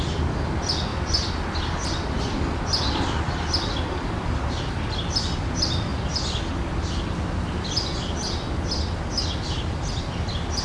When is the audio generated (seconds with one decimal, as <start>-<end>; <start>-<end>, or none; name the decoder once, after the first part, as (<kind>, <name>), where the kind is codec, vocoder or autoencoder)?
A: none